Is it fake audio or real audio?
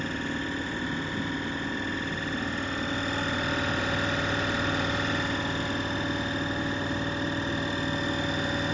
real